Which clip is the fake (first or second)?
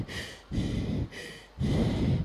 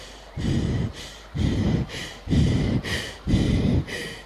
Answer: second